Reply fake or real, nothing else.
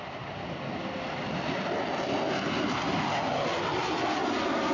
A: real